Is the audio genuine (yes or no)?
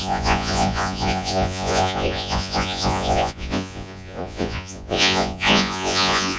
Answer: no